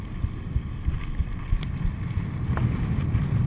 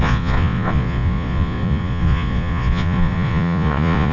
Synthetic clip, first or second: second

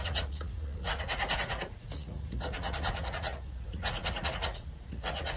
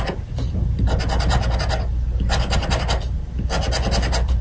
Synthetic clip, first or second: first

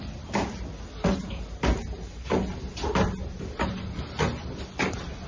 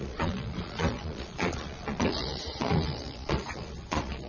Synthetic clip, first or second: second